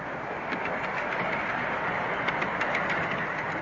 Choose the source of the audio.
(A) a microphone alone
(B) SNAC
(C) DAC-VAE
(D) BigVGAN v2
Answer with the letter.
D